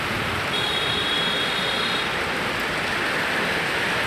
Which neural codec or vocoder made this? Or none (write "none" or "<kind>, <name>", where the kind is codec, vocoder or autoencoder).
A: none